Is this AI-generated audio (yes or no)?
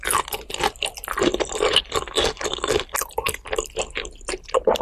no